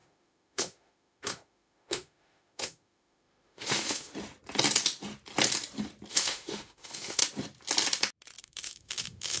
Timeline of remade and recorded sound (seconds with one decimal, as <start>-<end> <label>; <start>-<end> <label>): 0.0-4.1 remade; 4.1-6.1 recorded; 6.1-7.2 remade; 7.2-8.4 recorded; 8.4-9.4 remade